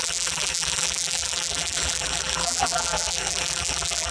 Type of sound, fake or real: fake